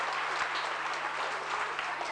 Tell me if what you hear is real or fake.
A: real